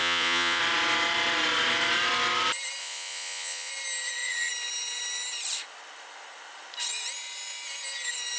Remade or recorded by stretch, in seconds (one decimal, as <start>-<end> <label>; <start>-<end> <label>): 0.0-0.6 remade; 0.6-2.8 recorded; 2.8-3.7 remade; 3.7-8.4 recorded